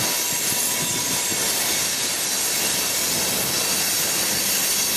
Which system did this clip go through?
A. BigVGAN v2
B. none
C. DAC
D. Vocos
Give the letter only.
B